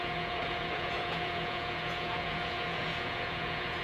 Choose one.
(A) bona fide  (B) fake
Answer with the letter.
B